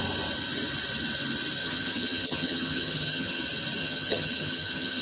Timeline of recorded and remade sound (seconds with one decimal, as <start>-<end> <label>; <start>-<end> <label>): 0.0-1.6 recorded; 1.6-3.4 remade; 3.4-3.8 recorded; 3.8-5.0 remade